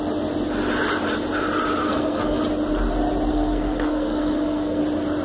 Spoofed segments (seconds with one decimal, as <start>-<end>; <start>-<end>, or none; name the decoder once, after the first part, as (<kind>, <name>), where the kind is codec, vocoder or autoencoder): 1.8-2.4 (codec, SNAC); 3.3-4.8